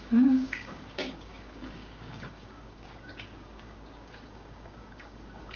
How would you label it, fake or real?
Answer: fake